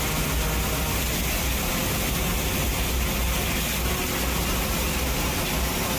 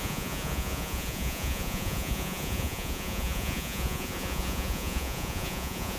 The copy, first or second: second